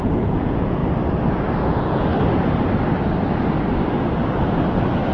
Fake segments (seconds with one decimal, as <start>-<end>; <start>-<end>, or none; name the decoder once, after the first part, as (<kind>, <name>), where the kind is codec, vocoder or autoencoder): 0.0-0.8 (vocoder, Vocos); 1.7-2.1